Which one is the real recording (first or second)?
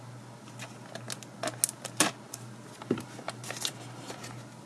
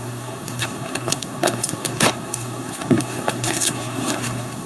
first